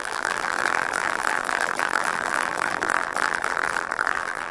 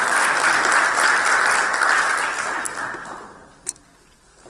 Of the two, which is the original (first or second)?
second